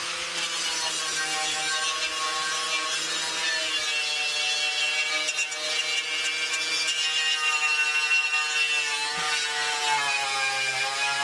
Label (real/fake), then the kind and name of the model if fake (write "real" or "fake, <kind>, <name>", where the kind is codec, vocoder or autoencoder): real